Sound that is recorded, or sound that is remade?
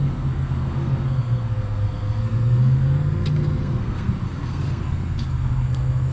remade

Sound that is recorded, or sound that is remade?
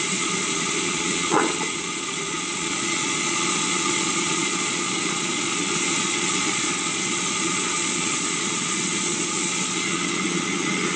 remade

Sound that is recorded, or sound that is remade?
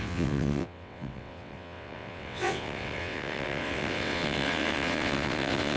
remade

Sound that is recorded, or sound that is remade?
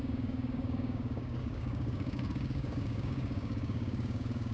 remade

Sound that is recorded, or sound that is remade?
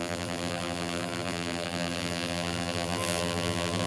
remade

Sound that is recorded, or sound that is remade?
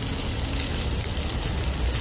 recorded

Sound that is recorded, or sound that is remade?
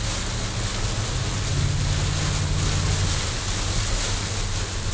recorded